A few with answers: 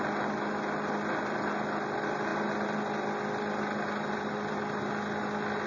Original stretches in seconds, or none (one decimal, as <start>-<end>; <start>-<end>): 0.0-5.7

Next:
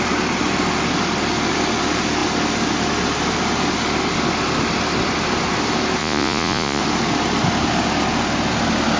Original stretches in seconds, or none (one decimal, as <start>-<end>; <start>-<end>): 0.0-6.0; 6.8-9.0

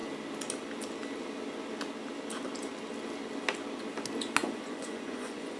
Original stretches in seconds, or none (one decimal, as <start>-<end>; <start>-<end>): 0.0-4.4

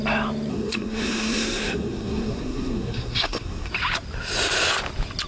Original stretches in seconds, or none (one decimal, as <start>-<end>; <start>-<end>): 0.0-0.5; 3.7-5.3